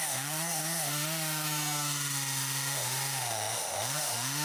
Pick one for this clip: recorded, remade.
remade